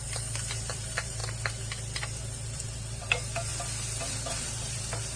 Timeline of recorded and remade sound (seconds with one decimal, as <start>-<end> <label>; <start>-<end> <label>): 0.0-3.5 remade; 3.5-4.1 recorded; 4.1-5.2 remade